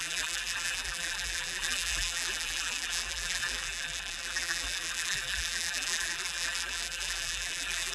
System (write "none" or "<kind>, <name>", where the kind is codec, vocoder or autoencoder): vocoder, BigVGAN v2